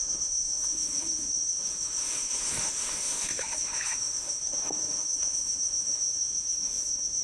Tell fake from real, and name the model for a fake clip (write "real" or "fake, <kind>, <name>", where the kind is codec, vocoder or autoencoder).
fake, autoencoder, DAC-VAE